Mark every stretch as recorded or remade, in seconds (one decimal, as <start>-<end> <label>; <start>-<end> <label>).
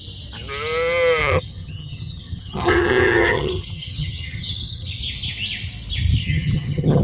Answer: 0.0-1.2 recorded; 1.2-5.0 remade; 5.0-6.2 recorded; 6.2-7.0 remade